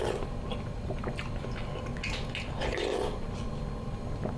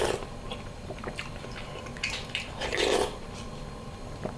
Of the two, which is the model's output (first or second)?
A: second